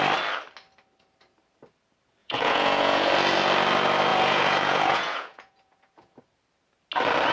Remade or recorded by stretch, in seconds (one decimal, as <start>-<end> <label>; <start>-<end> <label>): 0.0-2.2 recorded; 2.2-3.1 remade; 3.1-4.1 recorded; 4.1-6.2 remade; 6.2-7.3 recorded